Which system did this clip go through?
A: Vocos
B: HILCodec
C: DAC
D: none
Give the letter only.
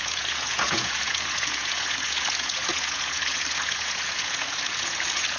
A